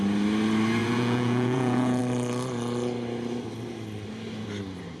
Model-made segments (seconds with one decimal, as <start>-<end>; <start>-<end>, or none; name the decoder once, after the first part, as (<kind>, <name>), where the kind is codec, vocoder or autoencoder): 0.8-2.0 (vocoder, Vocos)